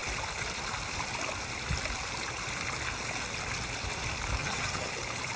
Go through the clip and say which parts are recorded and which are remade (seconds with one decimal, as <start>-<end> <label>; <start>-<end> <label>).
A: 0.0-4.4 recorded; 4.4-4.9 remade; 4.9-5.4 recorded